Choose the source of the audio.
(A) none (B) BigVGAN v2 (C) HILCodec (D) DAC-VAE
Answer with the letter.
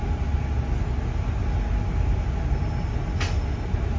A